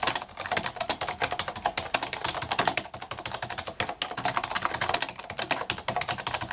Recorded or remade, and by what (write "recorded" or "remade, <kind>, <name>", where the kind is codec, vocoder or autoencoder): recorded